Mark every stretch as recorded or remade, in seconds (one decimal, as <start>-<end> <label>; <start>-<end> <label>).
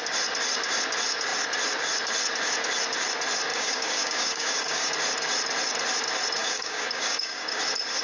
0.0-3.5 recorded; 3.5-4.9 remade; 4.9-6.4 recorded; 6.4-7.6 remade; 7.6-8.0 recorded